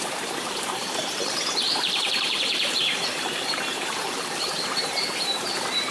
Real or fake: fake